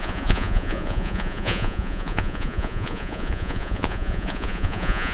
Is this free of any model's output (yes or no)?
no